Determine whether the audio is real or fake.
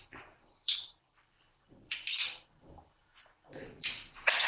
fake